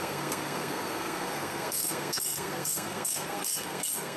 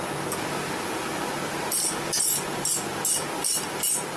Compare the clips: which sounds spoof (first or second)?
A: first